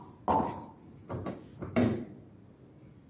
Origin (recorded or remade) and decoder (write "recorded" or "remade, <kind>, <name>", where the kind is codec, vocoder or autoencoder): recorded